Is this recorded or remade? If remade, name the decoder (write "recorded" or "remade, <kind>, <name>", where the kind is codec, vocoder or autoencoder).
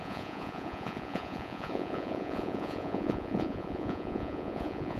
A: remade, vocoder, Vocos